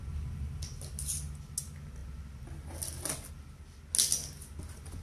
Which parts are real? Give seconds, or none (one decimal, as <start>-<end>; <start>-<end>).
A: 0.0-5.0